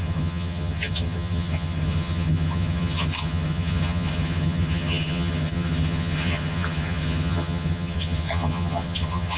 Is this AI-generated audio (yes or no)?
yes